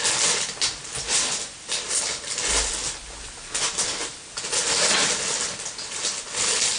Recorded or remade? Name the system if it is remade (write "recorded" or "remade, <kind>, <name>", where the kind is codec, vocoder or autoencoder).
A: recorded